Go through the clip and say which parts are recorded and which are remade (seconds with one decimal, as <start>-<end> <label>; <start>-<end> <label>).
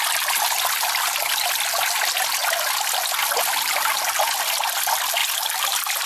0.0-5.2 recorded; 5.2-6.1 remade